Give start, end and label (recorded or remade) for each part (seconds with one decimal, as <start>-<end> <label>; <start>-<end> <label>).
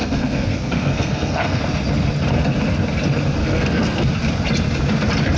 0.0-1.6 remade; 1.6-3.4 recorded; 3.4-4.1 remade; 4.1-5.4 recorded